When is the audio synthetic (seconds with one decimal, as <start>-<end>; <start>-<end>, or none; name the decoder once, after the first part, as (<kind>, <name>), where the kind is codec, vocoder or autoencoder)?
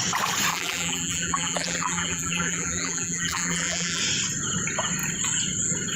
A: 0.5-4.0 (vocoder, BigVGAN v2)